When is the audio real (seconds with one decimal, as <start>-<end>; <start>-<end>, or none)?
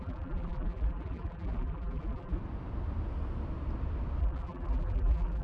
2.4-4.2